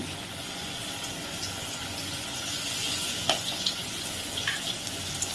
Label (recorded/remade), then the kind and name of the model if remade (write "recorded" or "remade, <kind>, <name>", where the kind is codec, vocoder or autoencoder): remade, vocoder, Vocos